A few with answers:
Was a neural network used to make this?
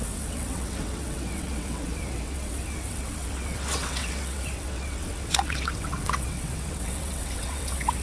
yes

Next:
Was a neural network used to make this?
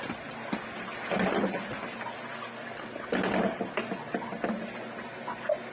no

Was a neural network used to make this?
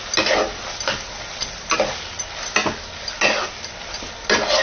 no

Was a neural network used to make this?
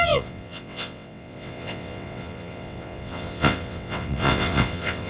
yes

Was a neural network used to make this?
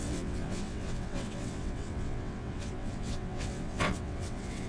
yes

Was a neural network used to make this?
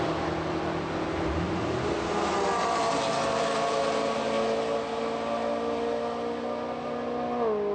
no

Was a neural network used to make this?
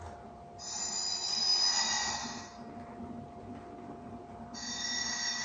no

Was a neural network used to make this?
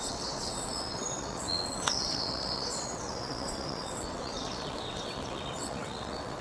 yes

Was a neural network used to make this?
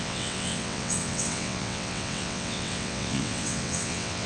yes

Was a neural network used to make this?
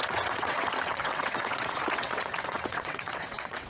yes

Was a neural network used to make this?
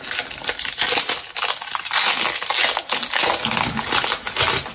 no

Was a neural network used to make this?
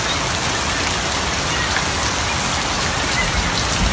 no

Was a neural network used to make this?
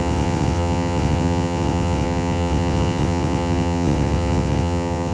yes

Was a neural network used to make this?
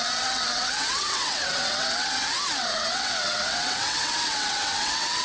yes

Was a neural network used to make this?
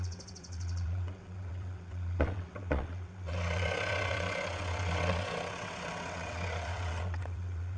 yes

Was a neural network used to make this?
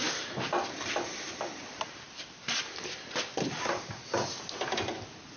no